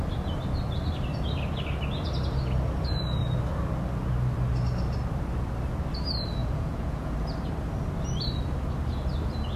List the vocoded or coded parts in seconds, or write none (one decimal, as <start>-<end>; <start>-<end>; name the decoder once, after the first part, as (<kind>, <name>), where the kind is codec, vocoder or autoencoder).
6.4-7.1 (vocoder, Vocos)